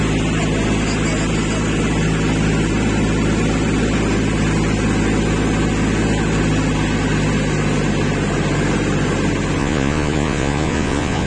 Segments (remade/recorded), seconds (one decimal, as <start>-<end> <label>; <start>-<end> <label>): 0.0-9.6 recorded; 9.6-11.3 remade